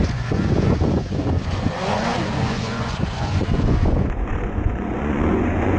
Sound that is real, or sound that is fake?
fake